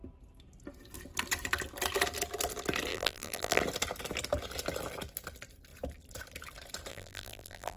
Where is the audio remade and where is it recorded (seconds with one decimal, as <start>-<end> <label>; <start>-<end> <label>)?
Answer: 0.0-2.9 recorded; 2.9-3.6 remade; 3.6-6.9 recorded; 6.9-7.8 remade